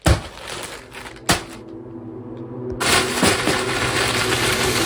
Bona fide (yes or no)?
yes